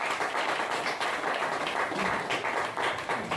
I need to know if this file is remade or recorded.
recorded